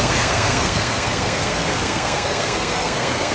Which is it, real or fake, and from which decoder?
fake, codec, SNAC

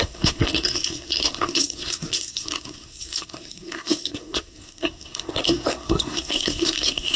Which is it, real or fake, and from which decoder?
fake, codec, SNAC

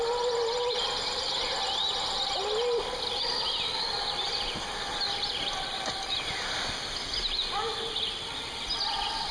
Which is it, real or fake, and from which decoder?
real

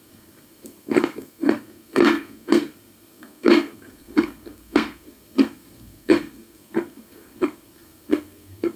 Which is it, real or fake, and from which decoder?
fake, codec, SNAC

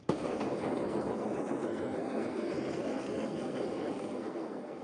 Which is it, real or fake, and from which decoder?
fake, codec, SNAC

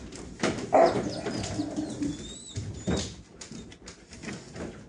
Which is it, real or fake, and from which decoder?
real